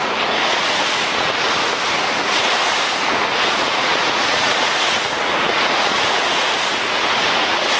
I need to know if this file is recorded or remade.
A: remade